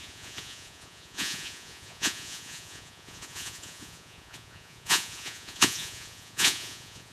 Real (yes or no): no